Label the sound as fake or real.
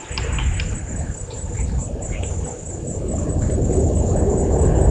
real